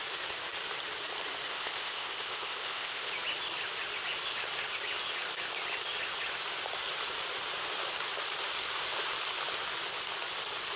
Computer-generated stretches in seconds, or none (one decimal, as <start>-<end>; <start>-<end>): 1.5-3.1